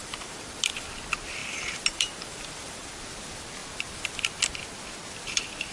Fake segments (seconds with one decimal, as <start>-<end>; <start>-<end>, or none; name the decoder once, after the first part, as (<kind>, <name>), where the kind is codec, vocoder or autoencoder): 0.0-0.9 (vocoder, BigVGAN v2); 1.4-2.9